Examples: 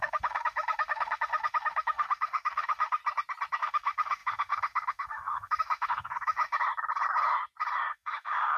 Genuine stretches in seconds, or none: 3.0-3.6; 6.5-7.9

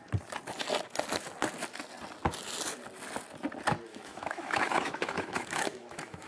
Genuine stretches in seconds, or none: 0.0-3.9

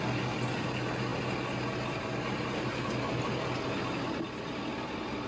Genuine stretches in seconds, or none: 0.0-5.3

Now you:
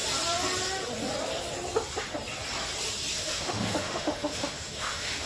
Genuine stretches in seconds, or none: 0.0-3.2

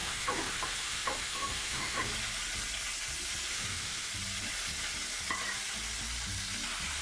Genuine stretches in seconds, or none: 2.1-3.5; 4.1-7.0